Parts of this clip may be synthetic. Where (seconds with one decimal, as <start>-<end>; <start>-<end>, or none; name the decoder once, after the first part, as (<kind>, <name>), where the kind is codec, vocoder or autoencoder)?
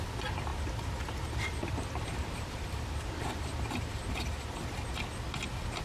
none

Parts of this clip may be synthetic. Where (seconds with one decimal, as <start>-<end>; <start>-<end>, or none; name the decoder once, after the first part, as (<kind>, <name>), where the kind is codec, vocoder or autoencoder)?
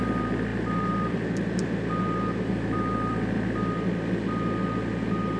0.0-5.4 (vocoder, BigVGAN v2)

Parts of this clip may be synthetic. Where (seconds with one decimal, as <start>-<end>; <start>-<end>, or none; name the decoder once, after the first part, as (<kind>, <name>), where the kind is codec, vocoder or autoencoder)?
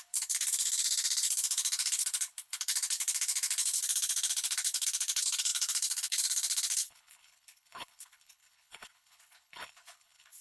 0.0-10.4 (codec, HILCodec)